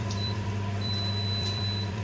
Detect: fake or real fake